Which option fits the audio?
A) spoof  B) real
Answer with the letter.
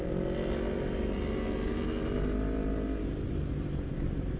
B